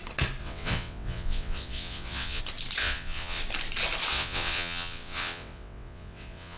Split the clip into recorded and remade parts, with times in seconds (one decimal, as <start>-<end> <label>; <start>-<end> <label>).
0.0-0.4 recorded; 0.4-2.4 remade; 2.4-2.8 recorded; 2.8-3.4 remade; 3.4-4.1 recorded; 4.1-6.6 remade